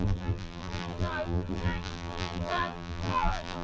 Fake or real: fake